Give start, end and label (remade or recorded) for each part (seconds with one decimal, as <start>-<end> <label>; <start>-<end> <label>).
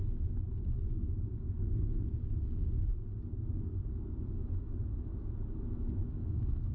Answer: 0.0-1.3 recorded; 1.3-2.2 remade; 2.2-3.5 recorded; 3.5-4.4 remade; 4.4-6.2 recorded; 6.2-6.7 remade